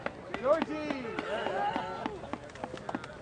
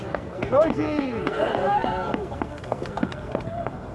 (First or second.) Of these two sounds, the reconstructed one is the second